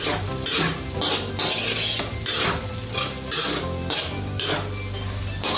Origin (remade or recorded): recorded